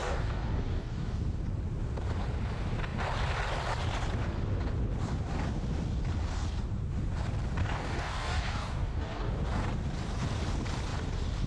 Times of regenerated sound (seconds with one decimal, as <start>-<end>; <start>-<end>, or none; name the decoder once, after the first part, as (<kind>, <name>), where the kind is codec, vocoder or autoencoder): 0.0-1.2 (codec, DAC); 7.6-9.3